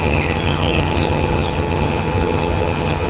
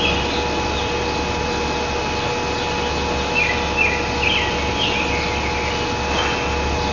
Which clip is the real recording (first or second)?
second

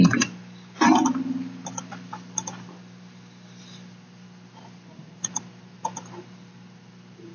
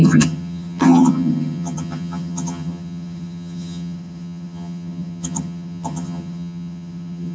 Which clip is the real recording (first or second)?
first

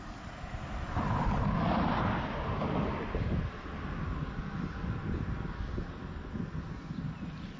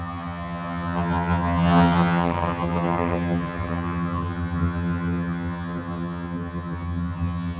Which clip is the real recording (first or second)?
first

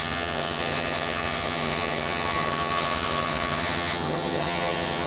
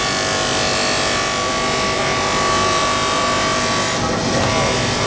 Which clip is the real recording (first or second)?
second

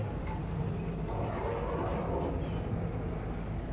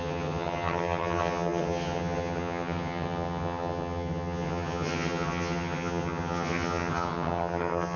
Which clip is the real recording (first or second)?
first